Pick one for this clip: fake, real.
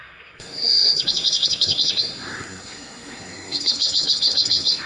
fake